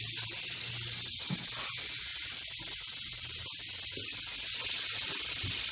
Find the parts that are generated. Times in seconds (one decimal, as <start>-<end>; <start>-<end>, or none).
none

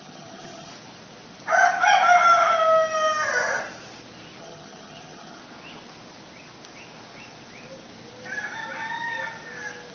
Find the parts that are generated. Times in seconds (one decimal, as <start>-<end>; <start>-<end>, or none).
0.0-0.7; 4.4-5.4